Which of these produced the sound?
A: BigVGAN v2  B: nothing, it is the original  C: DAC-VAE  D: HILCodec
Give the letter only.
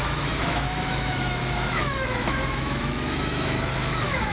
C